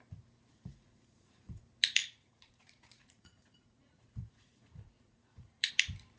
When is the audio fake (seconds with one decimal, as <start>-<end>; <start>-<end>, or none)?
0.5-1.6; 2.0-5.7